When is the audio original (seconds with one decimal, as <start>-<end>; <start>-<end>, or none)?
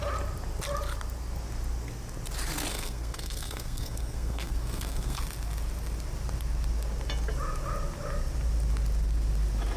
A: 0.0-2.7; 5.2-9.8